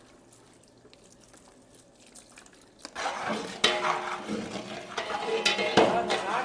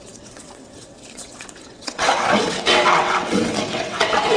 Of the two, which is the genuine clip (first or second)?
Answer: first